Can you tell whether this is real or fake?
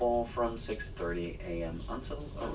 real